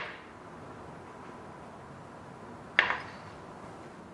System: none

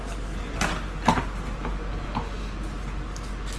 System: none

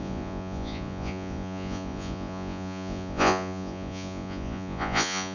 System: vocoder, Vocos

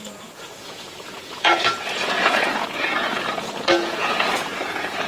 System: vocoder, Vocos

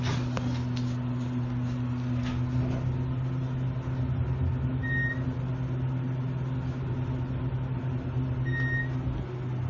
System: none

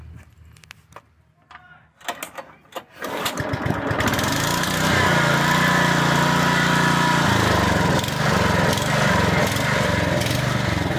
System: none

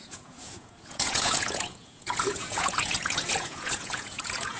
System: vocoder, Vocos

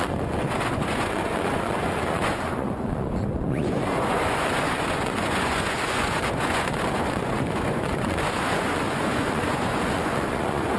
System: vocoder, Vocos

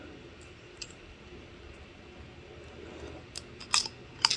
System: none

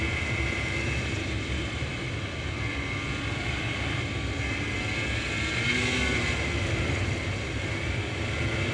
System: none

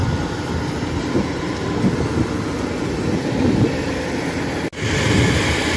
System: none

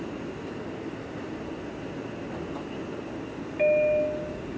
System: none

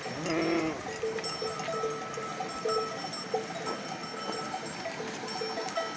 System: none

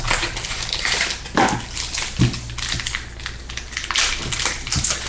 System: none